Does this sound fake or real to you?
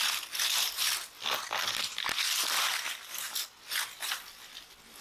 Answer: real